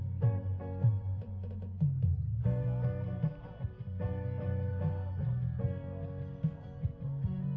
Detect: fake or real real